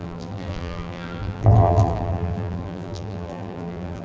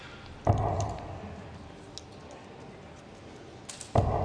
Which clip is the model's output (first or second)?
first